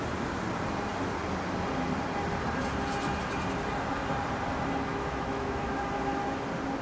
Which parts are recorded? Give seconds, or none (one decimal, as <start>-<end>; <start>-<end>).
0.0-4.9; 5.8-6.8